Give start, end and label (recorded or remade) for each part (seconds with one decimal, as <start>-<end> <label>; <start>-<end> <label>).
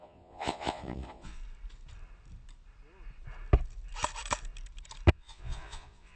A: 0.0-1.4 remade; 1.4-5.1 recorded; 5.1-6.2 remade